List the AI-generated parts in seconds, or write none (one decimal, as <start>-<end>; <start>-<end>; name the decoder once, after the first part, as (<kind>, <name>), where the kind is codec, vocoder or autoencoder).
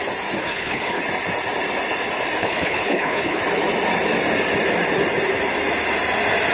0.4-1.0 (codec, HILCodec); 2.4-3.4